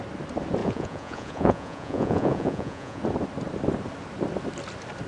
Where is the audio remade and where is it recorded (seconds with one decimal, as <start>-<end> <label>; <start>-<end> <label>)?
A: 0.0-0.6 recorded; 0.6-3.0 remade; 3.0-5.1 recorded